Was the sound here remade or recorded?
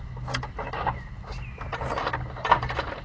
recorded